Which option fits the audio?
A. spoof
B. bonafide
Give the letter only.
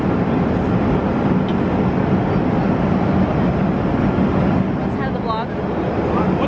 B